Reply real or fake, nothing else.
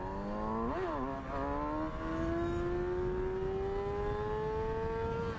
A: real